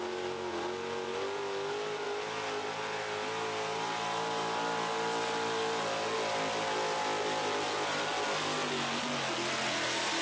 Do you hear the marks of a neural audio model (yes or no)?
no